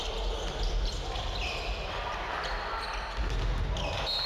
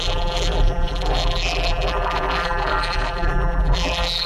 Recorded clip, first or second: first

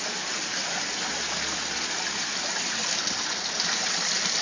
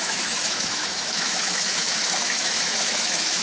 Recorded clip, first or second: first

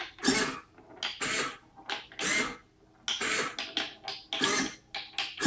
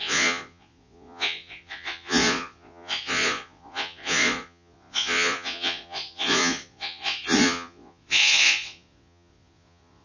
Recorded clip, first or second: first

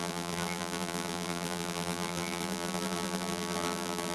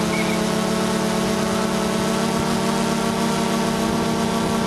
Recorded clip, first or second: second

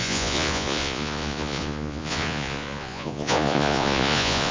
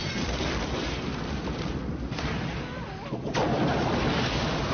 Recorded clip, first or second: second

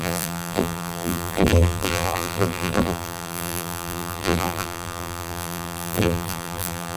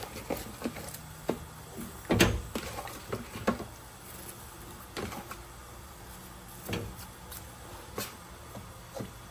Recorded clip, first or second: second